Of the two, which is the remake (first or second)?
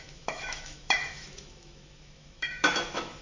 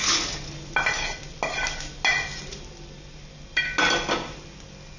first